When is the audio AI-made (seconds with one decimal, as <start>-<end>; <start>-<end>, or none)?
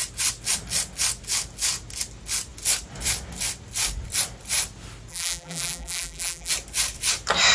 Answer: 5.1-6.5